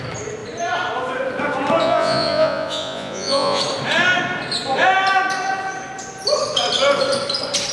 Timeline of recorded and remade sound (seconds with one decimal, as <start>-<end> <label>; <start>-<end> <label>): 0.0-1.8 recorded; 1.8-3.6 remade; 3.6-7.7 recorded

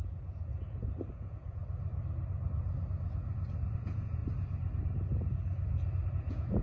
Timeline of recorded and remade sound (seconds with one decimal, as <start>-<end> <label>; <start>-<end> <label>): 0.0-0.5 remade; 0.5-1.1 recorded; 1.1-1.6 remade; 1.6-3.8 recorded; 3.8-4.2 remade; 4.2-6.1 recorded; 6.1-6.6 remade

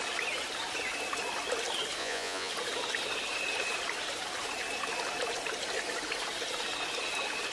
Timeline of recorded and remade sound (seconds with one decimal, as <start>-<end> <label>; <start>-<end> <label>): 0.0-2.0 recorded; 2.0-2.5 remade; 2.5-7.5 recorded

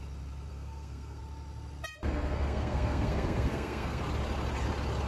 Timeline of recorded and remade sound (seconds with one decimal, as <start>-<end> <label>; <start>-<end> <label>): 0.0-0.5 recorded; 0.5-1.2 remade; 1.2-2.0 recorded; 2.0-4.0 remade; 4.0-5.1 recorded

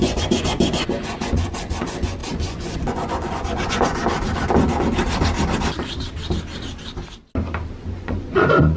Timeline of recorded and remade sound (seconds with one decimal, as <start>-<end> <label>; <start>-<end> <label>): 0.0-4.0 remade; 4.0-7.8 recorded; 7.8-8.8 remade

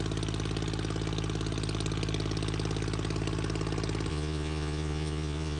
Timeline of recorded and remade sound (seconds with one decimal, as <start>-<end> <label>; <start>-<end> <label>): 0.0-4.1 recorded; 4.1-5.6 remade

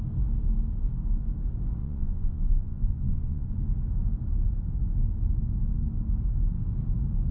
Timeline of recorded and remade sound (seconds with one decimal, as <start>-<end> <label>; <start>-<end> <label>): 0.0-1.8 recorded; 1.8-3.5 remade; 3.5-7.3 recorded

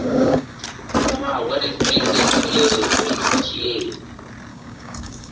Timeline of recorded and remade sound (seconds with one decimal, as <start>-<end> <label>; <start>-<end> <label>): 0.0-0.6 remade; 0.6-4.5 recorded; 4.5-5.3 remade